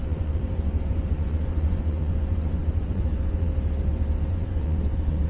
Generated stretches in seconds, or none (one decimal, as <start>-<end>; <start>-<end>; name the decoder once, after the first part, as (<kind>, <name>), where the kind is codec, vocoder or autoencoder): 0.0-3.5 (vocoder, Vocos); 4.3-5.3